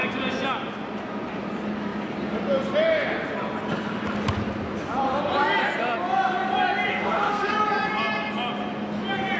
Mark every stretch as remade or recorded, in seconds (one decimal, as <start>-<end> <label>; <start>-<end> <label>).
0.0-6.9 recorded; 6.9-7.5 remade; 7.5-9.4 recorded